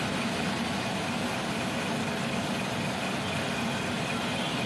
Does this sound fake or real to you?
real